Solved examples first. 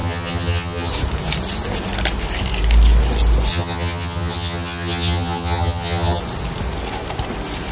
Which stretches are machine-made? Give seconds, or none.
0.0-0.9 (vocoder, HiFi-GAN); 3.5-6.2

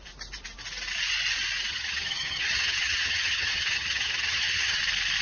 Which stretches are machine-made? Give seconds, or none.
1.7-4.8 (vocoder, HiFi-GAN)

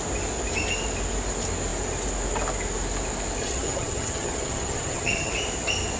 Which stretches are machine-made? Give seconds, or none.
3.4-5.3 (vocoder, HiFi-GAN)

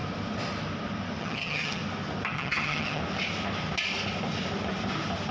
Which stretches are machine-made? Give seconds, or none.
1.2-1.8 (vocoder, HiFi-GAN); 2.3-3.0